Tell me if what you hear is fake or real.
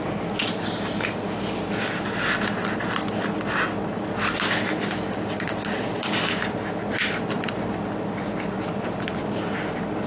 real